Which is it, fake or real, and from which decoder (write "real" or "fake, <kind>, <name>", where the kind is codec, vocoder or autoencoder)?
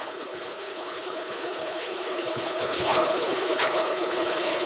fake, codec, HILCodec